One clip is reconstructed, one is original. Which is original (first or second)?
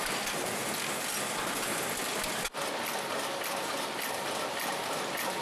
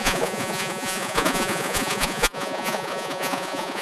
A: first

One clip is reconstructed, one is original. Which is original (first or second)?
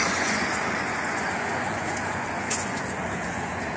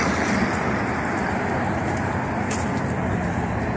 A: second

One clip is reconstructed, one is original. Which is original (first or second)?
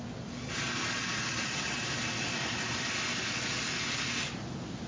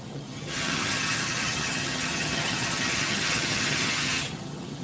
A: first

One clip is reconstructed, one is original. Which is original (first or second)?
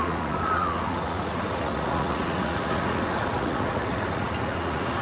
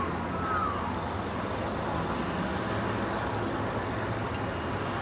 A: second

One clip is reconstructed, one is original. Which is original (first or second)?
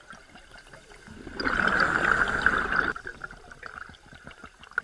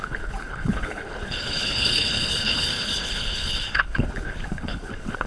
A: first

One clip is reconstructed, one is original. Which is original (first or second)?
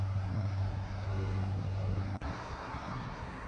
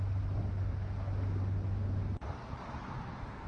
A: second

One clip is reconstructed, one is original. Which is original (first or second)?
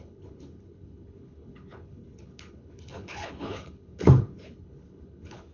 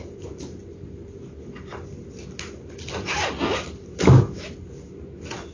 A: second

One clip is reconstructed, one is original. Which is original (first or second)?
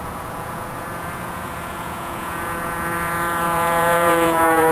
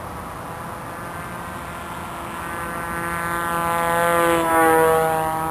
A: second